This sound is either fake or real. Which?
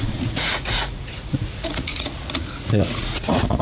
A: fake